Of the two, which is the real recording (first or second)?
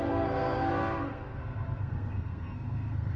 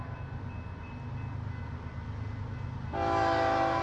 second